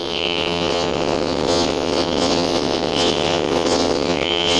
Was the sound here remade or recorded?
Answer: remade